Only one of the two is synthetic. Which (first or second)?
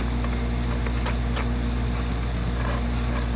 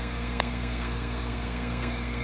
second